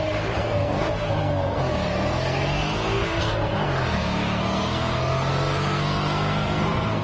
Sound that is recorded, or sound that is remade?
remade